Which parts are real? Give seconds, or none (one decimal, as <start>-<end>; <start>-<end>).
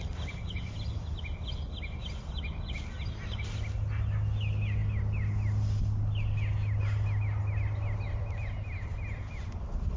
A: 0.0-10.0